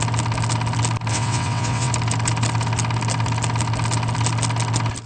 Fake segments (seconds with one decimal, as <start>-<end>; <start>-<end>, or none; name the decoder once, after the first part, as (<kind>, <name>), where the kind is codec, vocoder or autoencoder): 1.1-1.9 (vocoder, WaveNeXt)